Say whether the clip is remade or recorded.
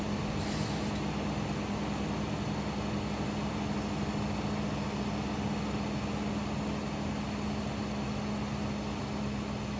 recorded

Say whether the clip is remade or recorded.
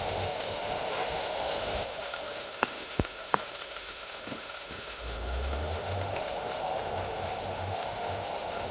remade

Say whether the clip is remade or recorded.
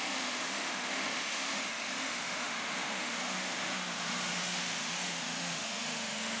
remade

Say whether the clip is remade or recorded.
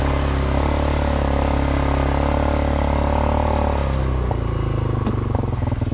recorded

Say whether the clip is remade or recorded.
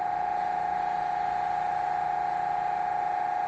recorded